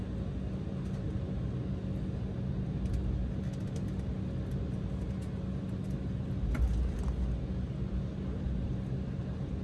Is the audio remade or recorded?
recorded